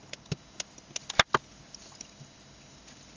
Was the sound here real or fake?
real